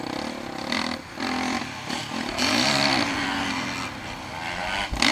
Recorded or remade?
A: recorded